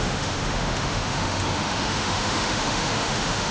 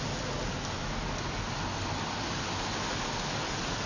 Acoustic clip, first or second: second